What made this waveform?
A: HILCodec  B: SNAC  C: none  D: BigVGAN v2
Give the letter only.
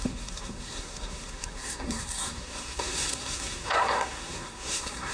B